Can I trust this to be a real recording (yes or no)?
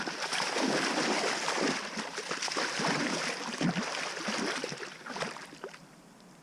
yes